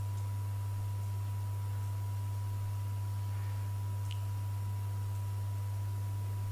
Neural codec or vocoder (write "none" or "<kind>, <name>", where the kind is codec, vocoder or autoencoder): none